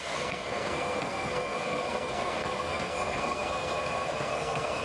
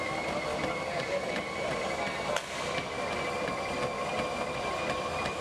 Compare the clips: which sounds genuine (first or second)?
second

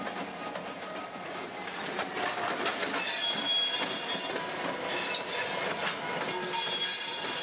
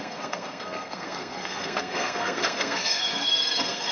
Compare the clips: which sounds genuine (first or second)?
first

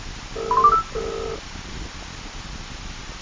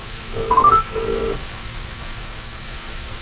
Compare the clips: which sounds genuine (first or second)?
first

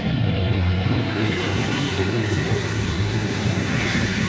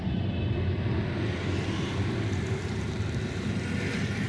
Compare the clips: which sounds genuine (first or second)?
second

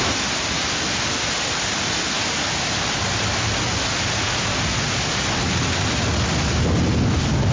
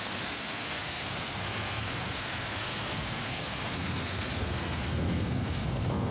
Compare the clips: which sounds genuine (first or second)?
first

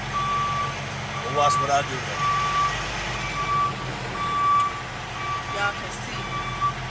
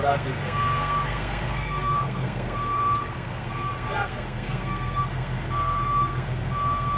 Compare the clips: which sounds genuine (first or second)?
first